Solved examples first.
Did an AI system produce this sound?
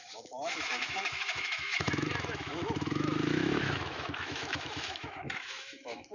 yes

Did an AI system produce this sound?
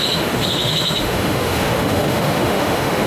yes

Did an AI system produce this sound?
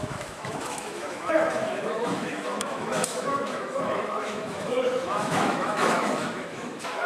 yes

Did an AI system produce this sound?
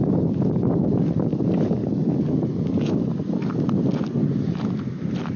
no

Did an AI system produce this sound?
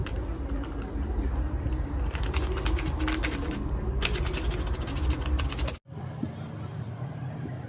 no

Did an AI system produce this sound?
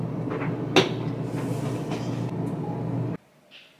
no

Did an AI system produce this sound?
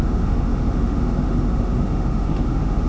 yes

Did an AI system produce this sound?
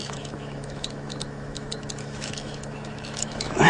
yes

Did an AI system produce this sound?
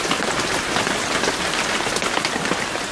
no